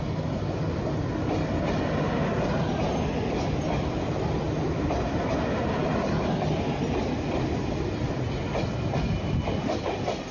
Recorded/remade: recorded